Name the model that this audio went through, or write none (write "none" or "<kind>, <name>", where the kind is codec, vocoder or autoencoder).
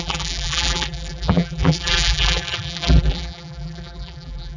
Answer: vocoder, BigVGAN v2